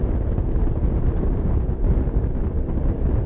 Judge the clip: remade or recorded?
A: recorded